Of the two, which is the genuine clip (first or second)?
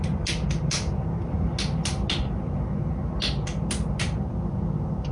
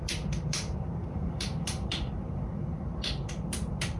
first